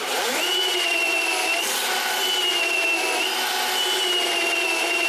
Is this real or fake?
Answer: real